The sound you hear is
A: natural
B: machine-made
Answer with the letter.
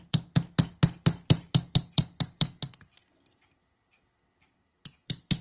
B